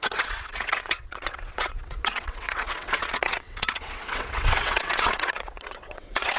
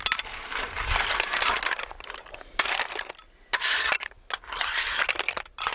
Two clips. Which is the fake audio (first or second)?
first